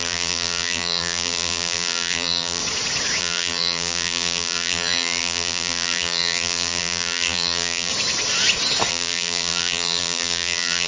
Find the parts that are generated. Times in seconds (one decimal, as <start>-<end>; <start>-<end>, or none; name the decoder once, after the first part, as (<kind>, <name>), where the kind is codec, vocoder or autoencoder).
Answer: 0.0-2.6 (vocoder, BigVGAN v2); 3.2-7.9; 8.9-10.9